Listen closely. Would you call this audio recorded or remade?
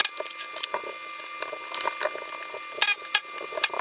recorded